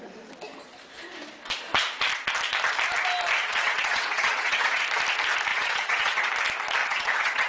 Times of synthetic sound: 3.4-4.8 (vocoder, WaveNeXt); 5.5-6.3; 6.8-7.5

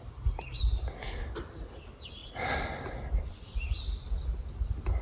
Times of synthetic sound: none

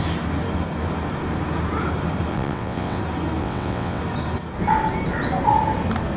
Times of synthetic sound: 2.3-3.0 (vocoder, WaveNeXt); 3.4-4.0

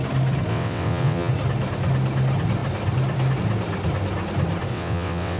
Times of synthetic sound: 0.5-1.3 (vocoder, WaveNeXt); 4.7-5.4

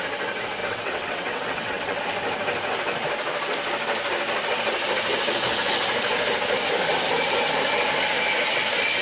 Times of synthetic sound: 0.6-2.0 (vocoder, WaveNeXt)